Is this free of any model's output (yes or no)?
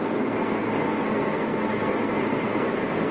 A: no